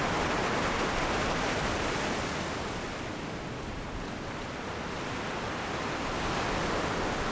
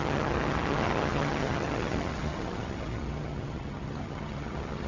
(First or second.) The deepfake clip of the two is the second